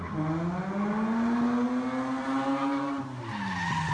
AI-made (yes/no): no